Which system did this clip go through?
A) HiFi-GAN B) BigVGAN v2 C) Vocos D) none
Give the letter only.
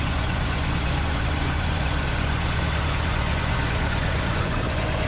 C